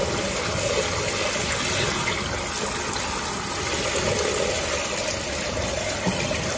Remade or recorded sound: recorded